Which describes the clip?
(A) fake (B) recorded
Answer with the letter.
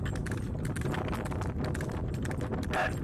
B